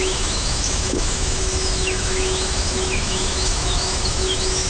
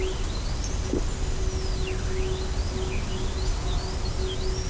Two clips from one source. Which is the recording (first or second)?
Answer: second